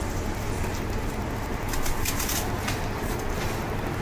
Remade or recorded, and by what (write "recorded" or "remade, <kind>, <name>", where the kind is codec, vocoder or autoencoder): recorded